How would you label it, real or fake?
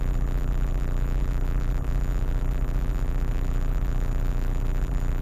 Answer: fake